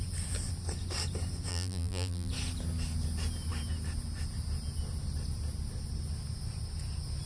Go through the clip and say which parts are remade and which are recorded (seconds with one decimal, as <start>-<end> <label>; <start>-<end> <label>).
0.0-1.5 recorded; 1.5-2.3 remade; 2.3-7.3 recorded